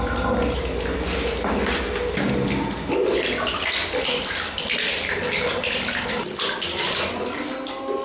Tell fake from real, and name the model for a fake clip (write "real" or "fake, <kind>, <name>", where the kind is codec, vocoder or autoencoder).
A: real